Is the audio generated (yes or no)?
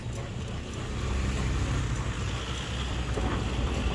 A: no